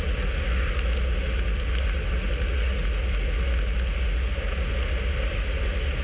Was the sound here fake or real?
real